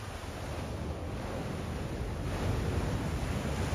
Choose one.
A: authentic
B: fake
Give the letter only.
A